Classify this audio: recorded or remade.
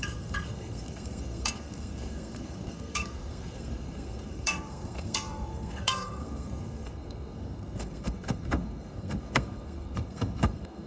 remade